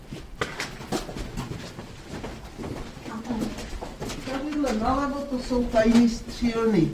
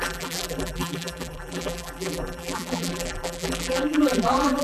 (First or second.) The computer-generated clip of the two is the second